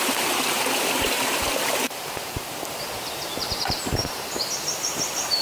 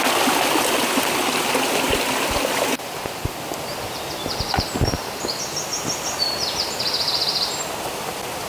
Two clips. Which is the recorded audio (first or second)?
second